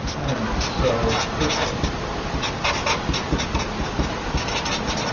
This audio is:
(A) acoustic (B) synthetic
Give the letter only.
A